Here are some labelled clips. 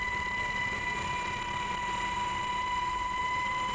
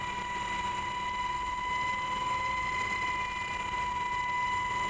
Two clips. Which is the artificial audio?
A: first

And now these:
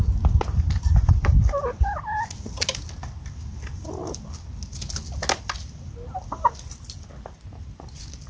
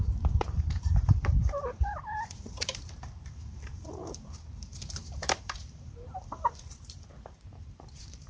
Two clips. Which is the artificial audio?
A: second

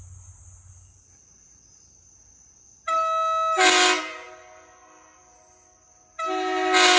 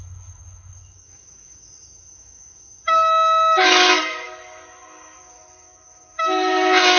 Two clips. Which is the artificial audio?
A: second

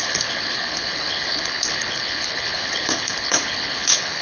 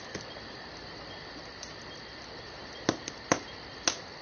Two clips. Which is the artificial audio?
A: first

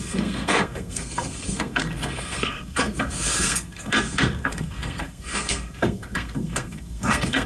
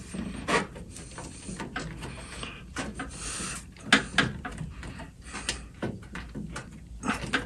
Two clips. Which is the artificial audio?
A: first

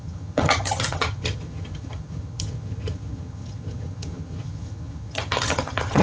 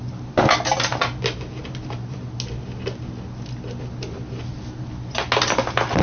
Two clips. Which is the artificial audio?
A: first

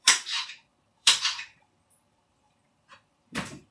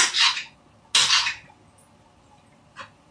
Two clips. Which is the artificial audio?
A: first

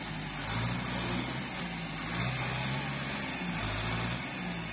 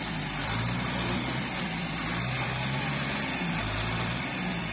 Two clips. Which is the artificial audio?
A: second